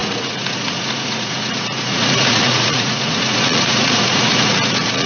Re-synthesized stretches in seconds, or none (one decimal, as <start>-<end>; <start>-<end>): 0.0-5.1